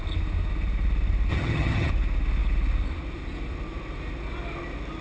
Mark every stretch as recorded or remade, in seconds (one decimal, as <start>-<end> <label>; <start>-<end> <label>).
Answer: 0.0-1.3 recorded; 1.3-1.9 remade; 1.9-5.0 recorded